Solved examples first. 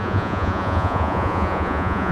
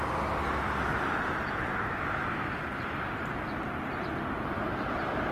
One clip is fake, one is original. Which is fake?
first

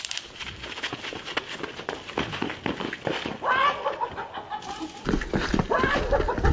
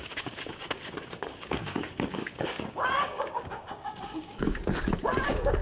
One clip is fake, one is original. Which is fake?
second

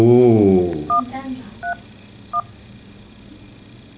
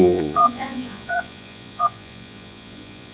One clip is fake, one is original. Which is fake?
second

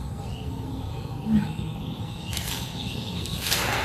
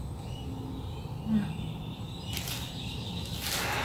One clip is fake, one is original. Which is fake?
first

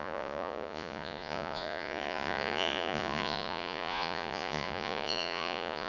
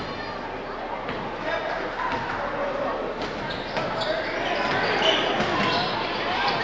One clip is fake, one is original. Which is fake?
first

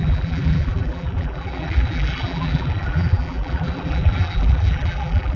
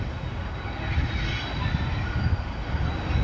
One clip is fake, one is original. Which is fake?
first